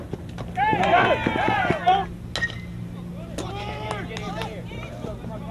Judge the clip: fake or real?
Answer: real